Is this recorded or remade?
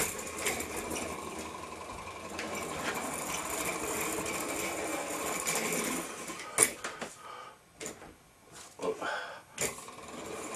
recorded